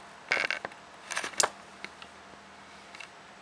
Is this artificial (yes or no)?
no